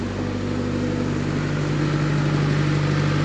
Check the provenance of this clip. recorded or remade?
recorded